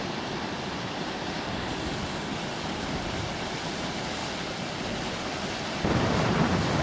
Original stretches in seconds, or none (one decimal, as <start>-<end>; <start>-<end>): 2.3-2.9; 4.2-5.8